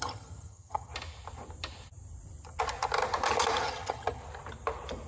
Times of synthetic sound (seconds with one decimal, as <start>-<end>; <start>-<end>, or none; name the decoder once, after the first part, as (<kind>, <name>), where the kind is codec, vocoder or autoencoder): 0.0-0.9 (vocoder, HiFi-GAN); 3.6-4.2